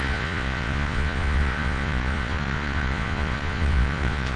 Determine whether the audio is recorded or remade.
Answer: remade